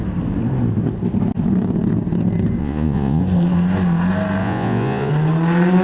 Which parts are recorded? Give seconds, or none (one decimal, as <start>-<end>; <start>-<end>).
0.0-2.6; 3.2-4.4; 5.1-5.8